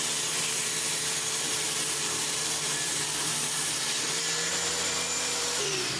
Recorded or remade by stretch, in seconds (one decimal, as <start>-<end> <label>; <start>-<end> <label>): 0.0-6.0 remade